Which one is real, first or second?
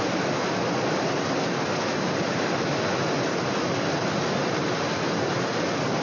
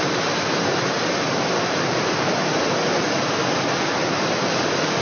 first